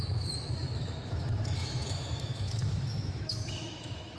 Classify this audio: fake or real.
fake